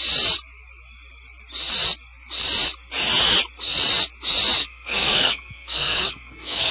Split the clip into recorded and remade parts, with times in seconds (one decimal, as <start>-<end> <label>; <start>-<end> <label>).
0.0-4.6 recorded; 4.6-6.7 remade